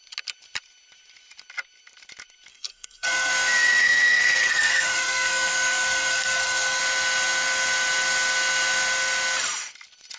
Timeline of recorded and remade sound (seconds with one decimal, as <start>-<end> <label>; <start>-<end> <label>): 0.0-2.5 recorded; 2.5-3.3 remade; 3.3-3.8 recorded; 3.8-6.8 remade; 6.8-10.2 recorded